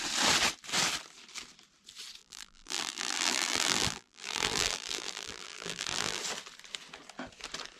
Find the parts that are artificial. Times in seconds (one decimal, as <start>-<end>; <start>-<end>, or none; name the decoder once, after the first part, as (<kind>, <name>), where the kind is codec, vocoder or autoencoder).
2.2-6.2 (vocoder, BigVGAN v2)